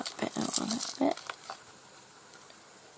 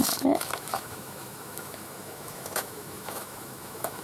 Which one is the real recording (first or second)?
first